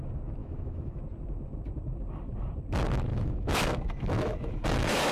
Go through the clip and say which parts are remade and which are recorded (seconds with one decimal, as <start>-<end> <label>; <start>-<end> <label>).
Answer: 0.0-0.4 recorded; 0.4-1.0 remade; 1.0-3.1 recorded; 3.1-5.1 remade